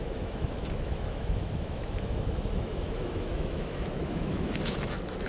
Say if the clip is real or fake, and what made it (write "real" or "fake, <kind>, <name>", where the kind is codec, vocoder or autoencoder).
fake, autoencoder, DAC-VAE